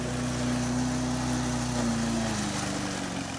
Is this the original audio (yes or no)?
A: yes